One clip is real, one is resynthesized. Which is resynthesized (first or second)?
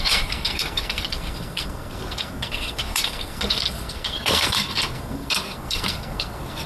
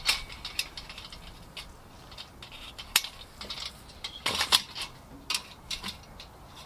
first